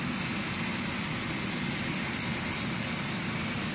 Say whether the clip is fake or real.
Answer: real